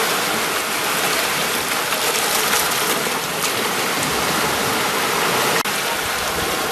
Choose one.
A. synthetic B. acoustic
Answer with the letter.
B